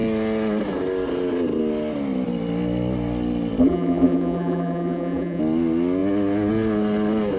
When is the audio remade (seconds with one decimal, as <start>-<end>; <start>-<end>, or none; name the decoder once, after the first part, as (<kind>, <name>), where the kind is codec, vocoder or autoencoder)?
3.6-5.4 (vocoder, BigVGAN v2)